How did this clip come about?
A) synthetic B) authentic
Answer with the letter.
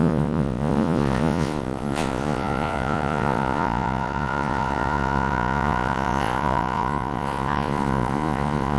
A